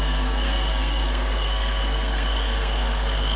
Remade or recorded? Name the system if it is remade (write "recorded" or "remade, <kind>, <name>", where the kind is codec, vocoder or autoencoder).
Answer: remade, codec, SNAC